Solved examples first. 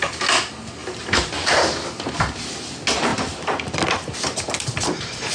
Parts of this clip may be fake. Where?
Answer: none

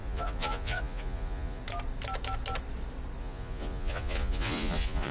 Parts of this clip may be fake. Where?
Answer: 0.0-1.6 (vocoder, Vocos); 3.2-5.1

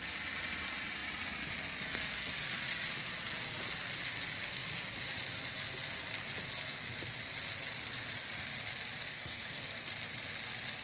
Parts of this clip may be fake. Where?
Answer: 9.1-9.9 (codec, SNAC)

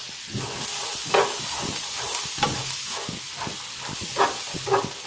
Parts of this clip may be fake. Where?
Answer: 2.6-3.3 (autoencoder, DAC-VAE)

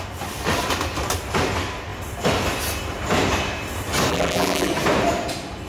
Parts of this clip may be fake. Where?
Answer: 4.1-4.7 (vocoder, BigVGAN v2)

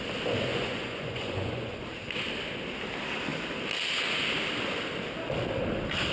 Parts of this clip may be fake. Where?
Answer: 0.5-1.8 (vocoder, Vocos)

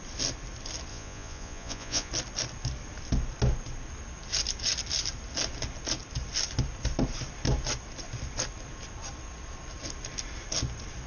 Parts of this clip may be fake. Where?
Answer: 0.9-2.1 (vocoder, Vocos)